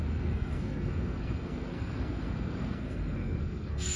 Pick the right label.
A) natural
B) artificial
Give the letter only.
B